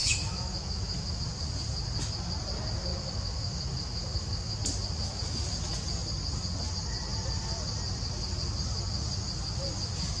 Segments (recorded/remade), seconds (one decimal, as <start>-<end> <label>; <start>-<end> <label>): 0.0-1.2 remade; 1.2-2.9 recorded; 2.9-4.6 remade; 4.6-10.2 recorded